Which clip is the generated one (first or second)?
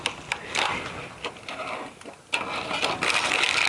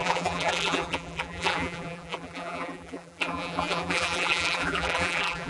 second